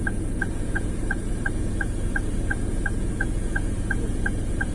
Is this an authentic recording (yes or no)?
no